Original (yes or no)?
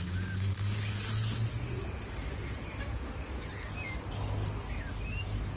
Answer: yes